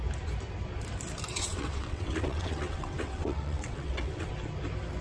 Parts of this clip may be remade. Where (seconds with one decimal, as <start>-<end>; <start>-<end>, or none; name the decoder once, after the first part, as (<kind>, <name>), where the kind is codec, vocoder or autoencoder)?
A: 1.3-4.3 (vocoder, WaveNeXt)